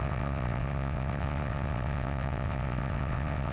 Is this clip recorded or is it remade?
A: remade